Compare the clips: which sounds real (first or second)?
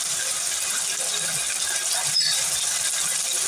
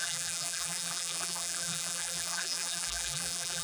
first